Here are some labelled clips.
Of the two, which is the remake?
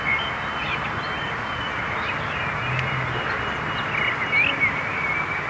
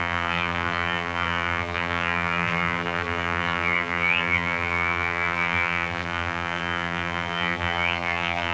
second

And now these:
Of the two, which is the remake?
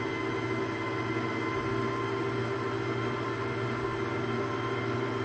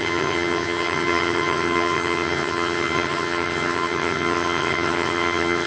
second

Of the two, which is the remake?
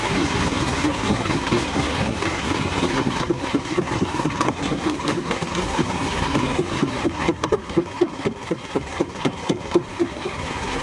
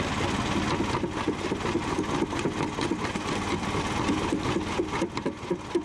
first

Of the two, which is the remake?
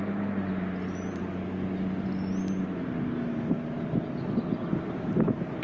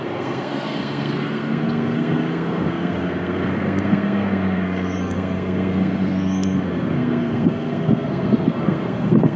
second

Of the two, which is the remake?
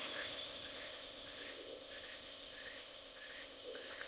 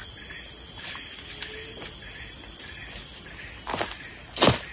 first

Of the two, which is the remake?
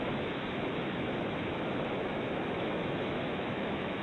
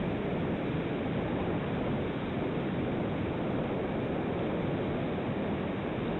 first